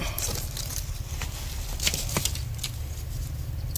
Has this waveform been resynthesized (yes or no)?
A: no